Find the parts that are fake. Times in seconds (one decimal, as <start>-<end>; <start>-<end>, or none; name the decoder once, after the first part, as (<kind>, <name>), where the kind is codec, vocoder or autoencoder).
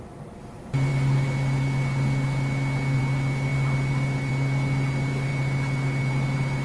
none